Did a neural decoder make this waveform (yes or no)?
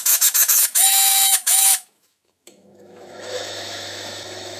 yes